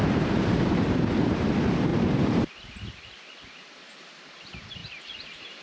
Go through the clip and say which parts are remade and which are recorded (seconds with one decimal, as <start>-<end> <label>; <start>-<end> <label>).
0.0-1.5 remade; 1.5-1.9 recorded; 1.9-2.6 remade; 2.6-4.8 recorded; 4.8-5.6 remade